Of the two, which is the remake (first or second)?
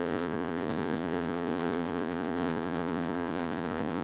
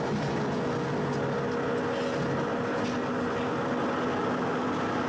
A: first